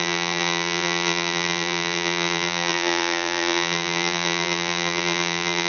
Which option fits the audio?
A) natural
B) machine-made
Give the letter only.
B